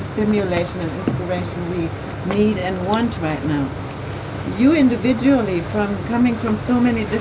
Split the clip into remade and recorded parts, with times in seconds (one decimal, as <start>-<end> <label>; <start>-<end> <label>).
0.0-7.2 recorded